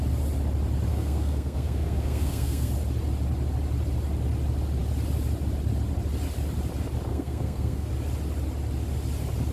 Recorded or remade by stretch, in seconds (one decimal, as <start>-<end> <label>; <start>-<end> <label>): 0.0-0.9 recorded; 0.9-2.7 remade; 2.7-7.1 recorded; 7.1-7.9 remade; 7.9-9.5 recorded